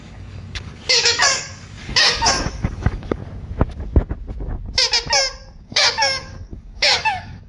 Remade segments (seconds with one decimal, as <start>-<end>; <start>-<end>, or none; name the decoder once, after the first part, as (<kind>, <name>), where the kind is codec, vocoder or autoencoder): 0.0-3.2 (codec, DAC); 5.6-7.5